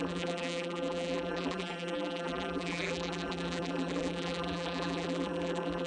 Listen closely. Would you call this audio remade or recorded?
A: remade